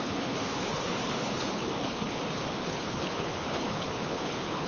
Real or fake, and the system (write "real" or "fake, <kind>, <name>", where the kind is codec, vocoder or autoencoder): fake, codec, HILCodec